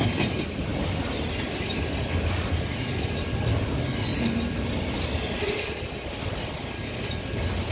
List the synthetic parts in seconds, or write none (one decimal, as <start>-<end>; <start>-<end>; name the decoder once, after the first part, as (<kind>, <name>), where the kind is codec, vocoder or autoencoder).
none